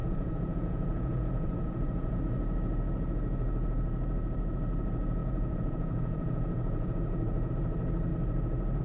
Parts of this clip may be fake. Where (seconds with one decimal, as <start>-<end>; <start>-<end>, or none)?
0.0-2.2; 5.2-7.5